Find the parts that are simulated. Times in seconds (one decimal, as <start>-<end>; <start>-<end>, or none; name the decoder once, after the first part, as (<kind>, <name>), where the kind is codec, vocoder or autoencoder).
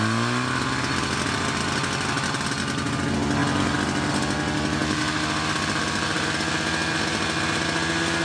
none